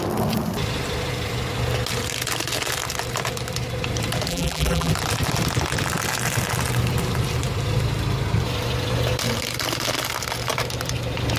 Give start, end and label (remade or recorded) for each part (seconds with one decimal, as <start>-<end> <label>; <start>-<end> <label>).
0.0-4.3 recorded; 4.3-4.9 remade; 4.9-11.4 recorded